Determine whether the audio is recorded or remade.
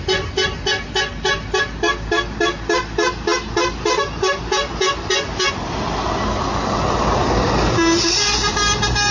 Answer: recorded